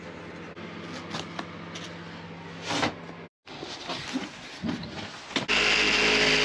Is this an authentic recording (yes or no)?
yes